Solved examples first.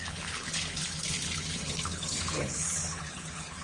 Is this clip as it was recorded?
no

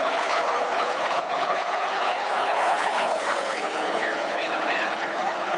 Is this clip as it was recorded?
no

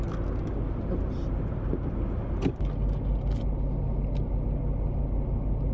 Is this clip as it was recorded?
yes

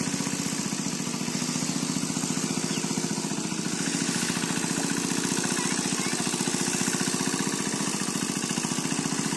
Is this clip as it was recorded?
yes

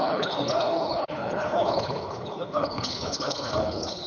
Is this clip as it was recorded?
no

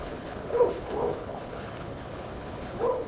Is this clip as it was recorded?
no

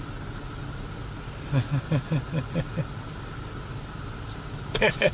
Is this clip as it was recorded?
yes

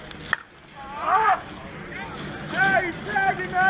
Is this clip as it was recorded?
yes